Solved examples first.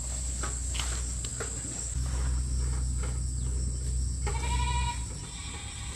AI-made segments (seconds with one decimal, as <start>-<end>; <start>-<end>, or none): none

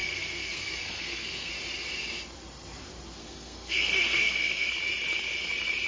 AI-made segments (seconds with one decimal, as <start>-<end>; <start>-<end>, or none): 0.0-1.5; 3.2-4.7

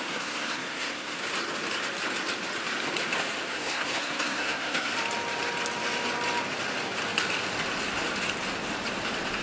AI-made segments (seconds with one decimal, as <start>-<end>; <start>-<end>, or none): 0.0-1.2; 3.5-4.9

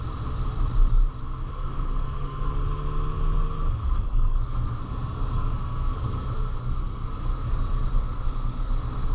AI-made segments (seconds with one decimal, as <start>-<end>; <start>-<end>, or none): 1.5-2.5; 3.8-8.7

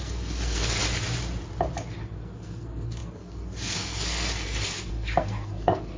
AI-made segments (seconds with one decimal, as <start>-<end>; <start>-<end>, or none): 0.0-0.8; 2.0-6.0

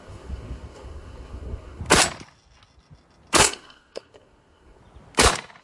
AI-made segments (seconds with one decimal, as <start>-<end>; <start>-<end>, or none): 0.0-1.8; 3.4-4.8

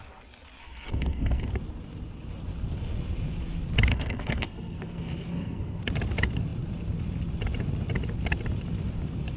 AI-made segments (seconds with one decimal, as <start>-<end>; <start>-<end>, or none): 0.6-1.5; 3.9-5.8

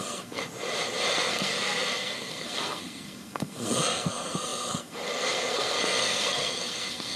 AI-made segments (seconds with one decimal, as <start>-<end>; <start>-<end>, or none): 0.0-0.4; 1.1-7.2